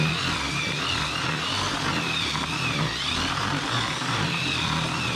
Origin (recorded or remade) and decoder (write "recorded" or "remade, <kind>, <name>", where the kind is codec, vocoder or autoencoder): recorded